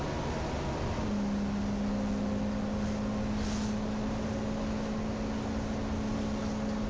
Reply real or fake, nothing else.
real